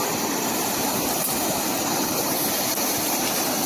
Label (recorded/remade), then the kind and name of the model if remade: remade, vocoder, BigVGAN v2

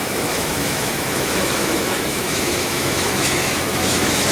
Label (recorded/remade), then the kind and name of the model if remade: remade, autoencoder, DAC-VAE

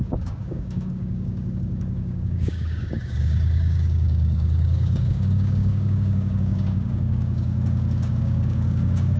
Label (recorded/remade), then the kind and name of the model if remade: remade, codec, DAC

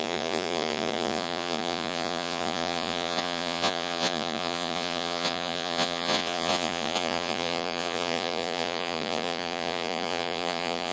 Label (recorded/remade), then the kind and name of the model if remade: remade, vocoder, Vocos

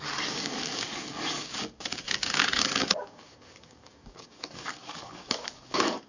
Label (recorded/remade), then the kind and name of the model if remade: remade, codec, DAC